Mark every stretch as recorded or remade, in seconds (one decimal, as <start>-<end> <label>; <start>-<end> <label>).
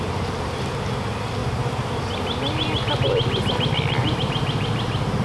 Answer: 0.0-1.4 recorded; 1.4-2.0 remade; 2.0-4.0 recorded; 4.0-5.2 remade